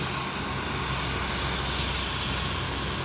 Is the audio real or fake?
real